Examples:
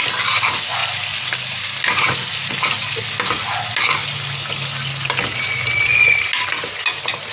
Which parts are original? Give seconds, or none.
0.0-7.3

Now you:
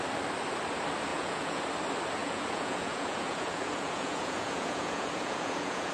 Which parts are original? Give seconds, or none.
0.0-1.1; 1.6-2.2

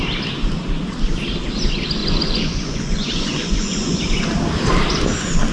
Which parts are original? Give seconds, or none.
0.0-2.0; 4.0-5.5

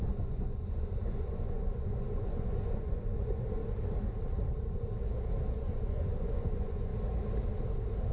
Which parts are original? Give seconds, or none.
3.6-5.5; 6.9-8.1

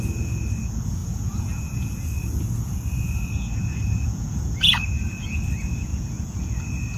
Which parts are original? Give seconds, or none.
none

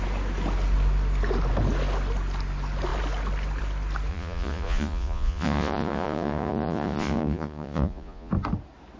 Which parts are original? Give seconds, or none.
0.0-4.1; 8.3-9.0

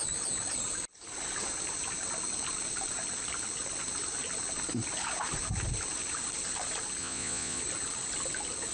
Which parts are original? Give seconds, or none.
0.0-7.0; 7.6-8.7